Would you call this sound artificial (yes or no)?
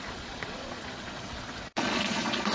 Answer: yes